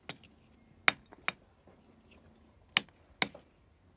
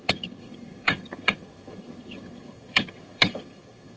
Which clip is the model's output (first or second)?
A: second